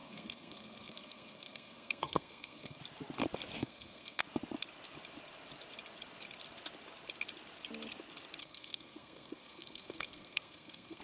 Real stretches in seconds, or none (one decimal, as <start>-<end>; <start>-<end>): 2.8-3.6; 4.2-8.4